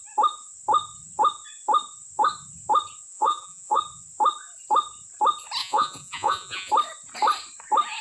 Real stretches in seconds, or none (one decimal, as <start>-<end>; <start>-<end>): 0.0-3.1; 3.8-5.6; 6.7-8.0